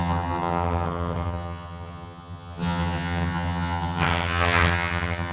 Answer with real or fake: fake